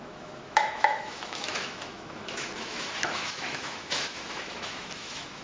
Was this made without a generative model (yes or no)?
no